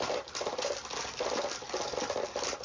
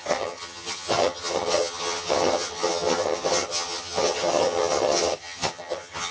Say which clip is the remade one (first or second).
second